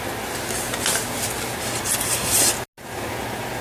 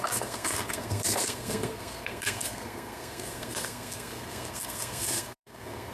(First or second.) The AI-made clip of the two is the second